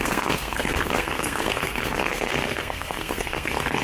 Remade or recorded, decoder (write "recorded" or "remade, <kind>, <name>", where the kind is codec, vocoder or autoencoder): remade, codec, SNAC